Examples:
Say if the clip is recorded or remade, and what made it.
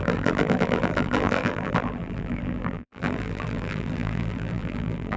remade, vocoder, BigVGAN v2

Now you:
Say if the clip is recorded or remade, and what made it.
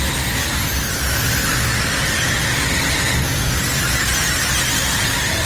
recorded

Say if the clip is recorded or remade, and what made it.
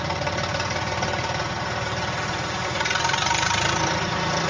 recorded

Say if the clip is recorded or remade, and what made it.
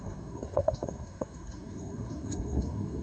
remade, codec, SNAC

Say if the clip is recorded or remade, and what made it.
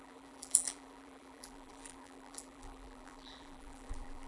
remade, vocoder, BigVGAN v2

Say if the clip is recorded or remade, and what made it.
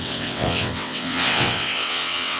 remade, vocoder, WaveNeXt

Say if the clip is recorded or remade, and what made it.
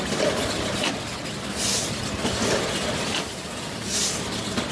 recorded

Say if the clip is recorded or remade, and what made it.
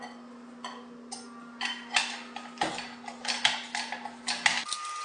recorded